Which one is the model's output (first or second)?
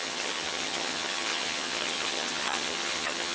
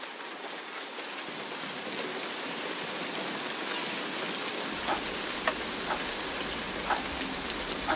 first